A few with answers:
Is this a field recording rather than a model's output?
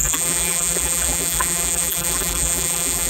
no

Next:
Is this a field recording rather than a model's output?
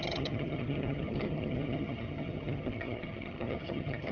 no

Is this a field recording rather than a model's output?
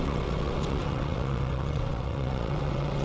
no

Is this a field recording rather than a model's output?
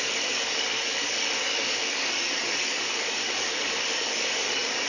no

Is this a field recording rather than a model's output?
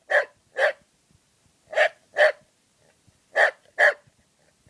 yes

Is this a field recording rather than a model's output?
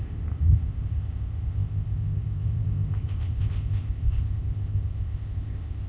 no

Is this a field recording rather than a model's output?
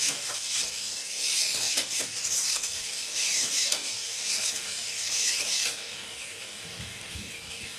no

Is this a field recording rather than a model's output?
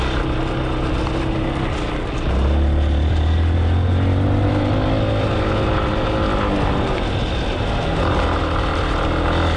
yes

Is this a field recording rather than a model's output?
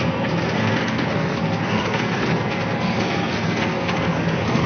no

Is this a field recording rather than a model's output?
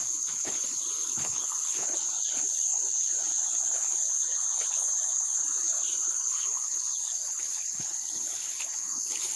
no